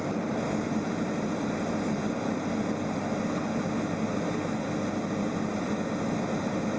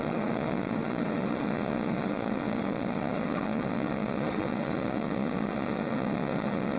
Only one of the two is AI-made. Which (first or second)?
second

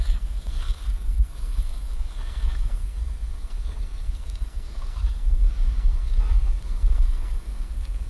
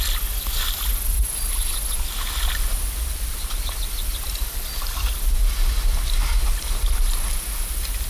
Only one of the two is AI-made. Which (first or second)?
first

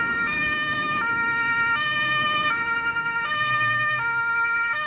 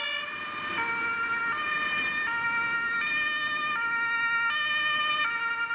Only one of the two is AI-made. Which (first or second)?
first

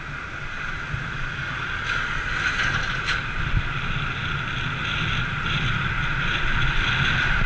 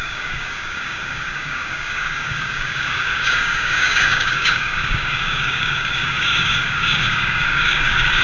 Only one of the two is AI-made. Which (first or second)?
second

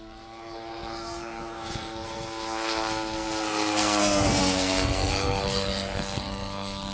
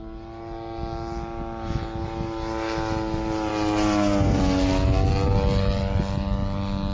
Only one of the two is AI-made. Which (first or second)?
first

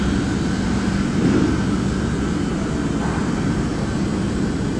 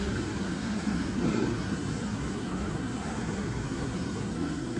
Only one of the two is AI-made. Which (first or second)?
second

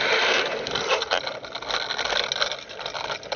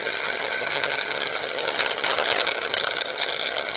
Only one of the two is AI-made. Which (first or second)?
second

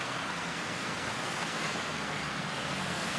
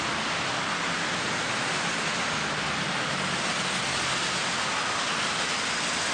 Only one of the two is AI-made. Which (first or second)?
first